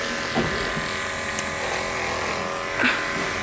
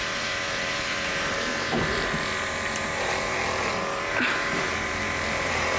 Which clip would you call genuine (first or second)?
first